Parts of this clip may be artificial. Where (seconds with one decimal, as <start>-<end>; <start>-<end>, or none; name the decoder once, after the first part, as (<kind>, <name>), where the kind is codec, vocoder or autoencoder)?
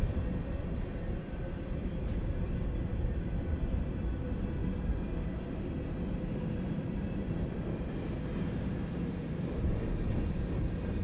none